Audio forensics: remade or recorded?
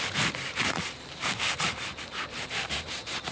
remade